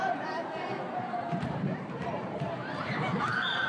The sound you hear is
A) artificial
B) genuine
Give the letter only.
A